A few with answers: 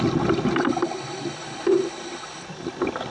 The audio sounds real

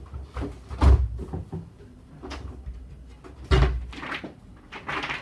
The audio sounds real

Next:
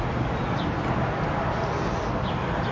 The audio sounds real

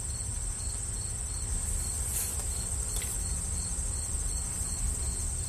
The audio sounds real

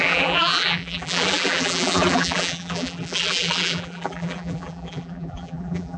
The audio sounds fake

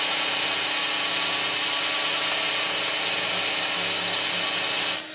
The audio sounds real